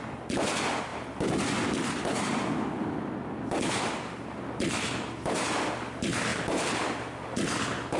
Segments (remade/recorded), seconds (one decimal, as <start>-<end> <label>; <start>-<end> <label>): 0.0-8.0 recorded

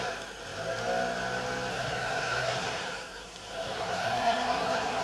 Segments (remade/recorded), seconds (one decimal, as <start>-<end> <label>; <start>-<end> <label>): 0.0-1.7 recorded; 1.7-5.0 remade

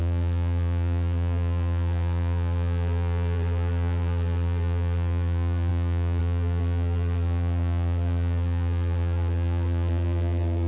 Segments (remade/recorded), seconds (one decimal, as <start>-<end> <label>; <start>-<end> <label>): 0.0-10.7 remade